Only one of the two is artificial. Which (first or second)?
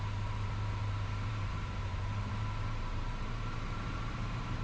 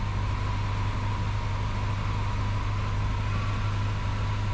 first